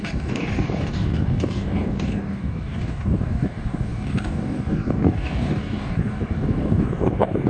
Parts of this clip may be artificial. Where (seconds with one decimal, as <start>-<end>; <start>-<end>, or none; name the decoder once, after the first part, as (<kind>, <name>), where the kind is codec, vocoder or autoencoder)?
0.0-7.5 (codec, DAC)